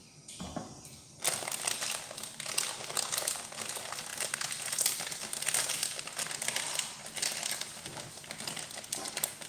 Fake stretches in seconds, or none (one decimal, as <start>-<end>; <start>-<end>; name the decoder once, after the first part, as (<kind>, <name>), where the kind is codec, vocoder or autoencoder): none